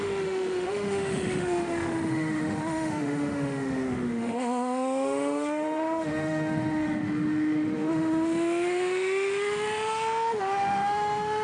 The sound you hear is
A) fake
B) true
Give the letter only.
A